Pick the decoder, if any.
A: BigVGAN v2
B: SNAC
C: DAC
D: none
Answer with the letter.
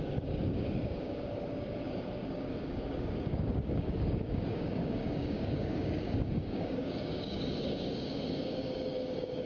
C